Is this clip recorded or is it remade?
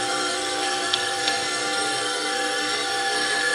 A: remade